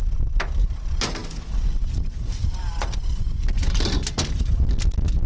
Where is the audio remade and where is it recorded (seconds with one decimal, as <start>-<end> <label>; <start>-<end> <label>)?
0.0-5.3 recorded